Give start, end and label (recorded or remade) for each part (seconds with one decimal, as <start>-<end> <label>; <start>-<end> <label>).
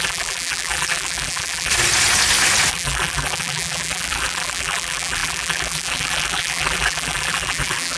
0.0-1.7 remade; 1.7-2.7 recorded; 2.7-8.0 remade